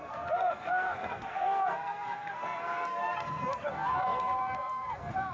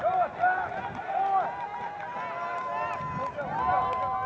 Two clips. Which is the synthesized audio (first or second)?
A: first